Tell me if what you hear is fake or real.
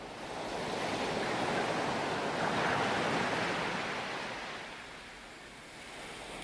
real